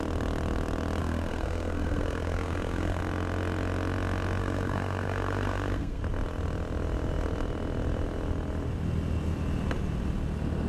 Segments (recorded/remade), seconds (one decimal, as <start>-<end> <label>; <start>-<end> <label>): 0.0-1.0 recorded; 1.0-3.0 remade; 3.0-4.4 recorded; 4.4-6.0 remade; 6.0-10.7 recorded